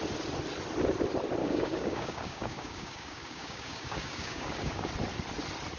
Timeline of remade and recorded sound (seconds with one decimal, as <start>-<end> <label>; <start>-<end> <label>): 0.0-1.4 recorded; 1.4-4.9 remade; 4.9-5.8 recorded